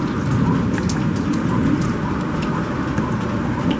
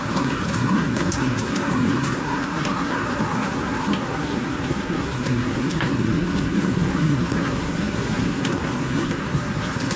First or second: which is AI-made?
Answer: second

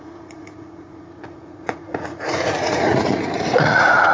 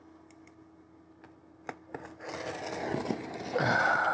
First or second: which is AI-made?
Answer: first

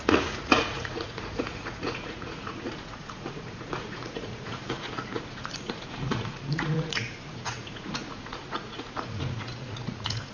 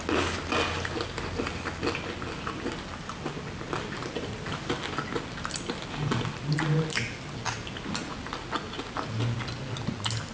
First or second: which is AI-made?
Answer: first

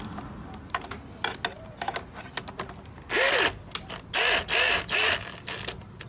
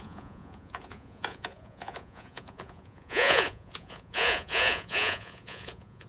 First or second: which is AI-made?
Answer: second